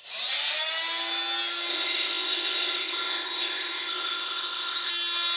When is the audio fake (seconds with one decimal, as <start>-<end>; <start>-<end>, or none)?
1.7-4.9